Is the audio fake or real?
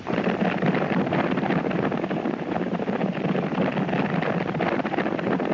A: real